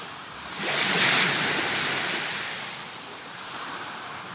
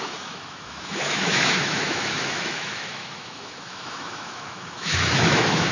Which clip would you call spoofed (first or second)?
second